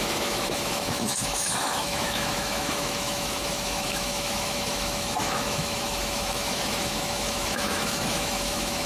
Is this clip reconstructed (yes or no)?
yes